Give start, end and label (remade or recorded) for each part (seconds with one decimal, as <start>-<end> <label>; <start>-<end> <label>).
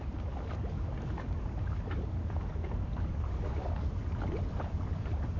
0.0-4.0 remade; 4.0-4.6 recorded; 4.6-5.4 remade